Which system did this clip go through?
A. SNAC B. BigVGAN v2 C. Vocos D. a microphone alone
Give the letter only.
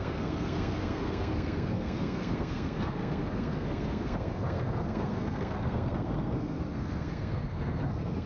A